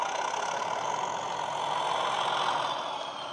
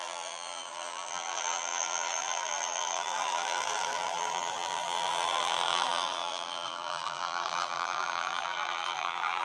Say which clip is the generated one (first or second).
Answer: second